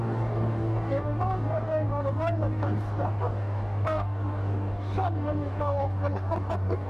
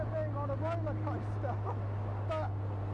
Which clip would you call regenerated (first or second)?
first